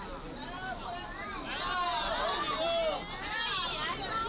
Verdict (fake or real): real